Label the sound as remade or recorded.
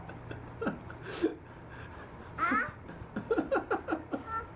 recorded